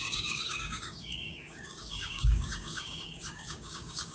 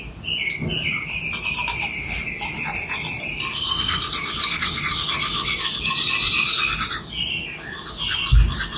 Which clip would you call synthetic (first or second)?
first